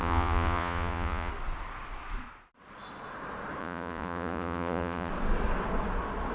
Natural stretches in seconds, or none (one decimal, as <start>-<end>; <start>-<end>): 1.3-3.6; 5.1-6.3